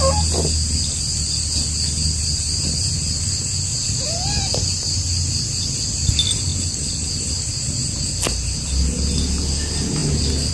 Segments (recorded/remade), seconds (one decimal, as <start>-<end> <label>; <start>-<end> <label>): 0.0-10.5 recorded